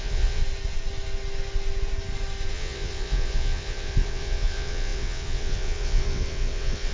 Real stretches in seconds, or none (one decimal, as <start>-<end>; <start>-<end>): 0.4-2.5